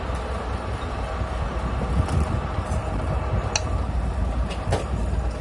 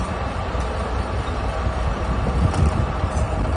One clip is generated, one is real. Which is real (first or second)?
first